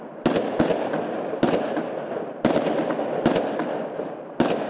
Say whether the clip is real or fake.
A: real